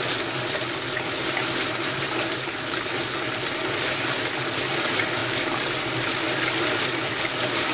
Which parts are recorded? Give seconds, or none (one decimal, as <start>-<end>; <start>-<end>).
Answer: 0.0-7.7